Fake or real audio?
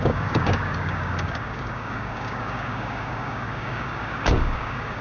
fake